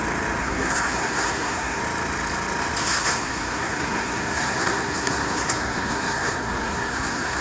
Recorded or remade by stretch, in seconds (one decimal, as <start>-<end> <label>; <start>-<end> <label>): 0.0-0.4 recorded; 0.4-1.8 remade; 1.8-2.8 recorded; 2.8-7.4 remade